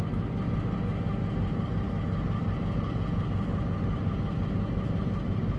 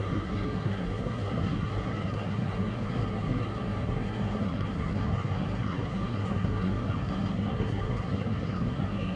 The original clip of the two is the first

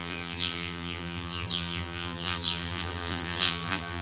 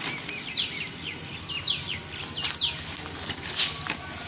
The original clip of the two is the second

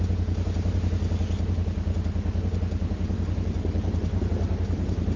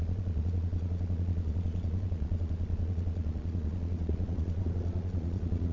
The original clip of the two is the first